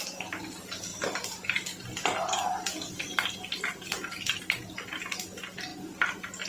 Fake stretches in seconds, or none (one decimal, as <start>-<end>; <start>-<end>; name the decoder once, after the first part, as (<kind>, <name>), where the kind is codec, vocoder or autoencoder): none